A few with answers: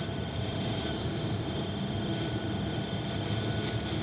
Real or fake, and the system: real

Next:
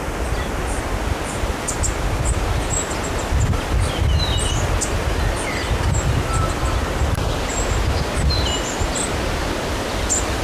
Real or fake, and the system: real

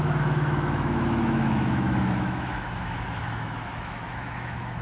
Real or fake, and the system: fake, autoencoder, DAC-VAE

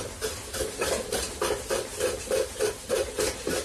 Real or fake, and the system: real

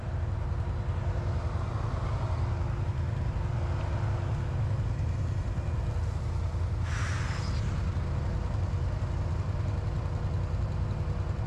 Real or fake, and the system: real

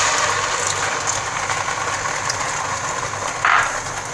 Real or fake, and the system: real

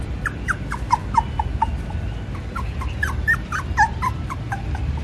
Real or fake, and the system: real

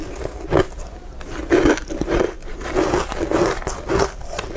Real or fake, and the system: real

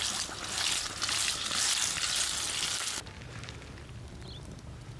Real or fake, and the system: real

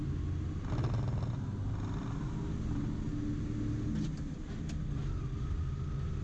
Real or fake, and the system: real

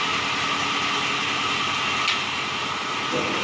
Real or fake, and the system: real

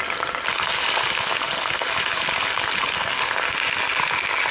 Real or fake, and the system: real